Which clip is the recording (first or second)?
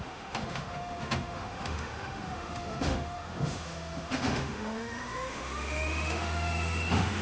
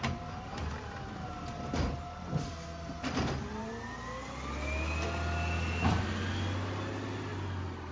second